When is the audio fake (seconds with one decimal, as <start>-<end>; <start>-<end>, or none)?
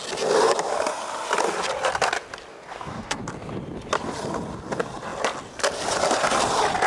2.5-3.2